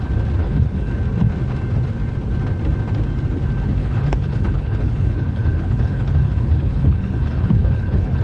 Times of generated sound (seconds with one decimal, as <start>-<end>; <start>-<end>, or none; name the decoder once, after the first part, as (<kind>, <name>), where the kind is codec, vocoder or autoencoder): 0.4-0.9 (codec, HILCodec); 3.8-8.2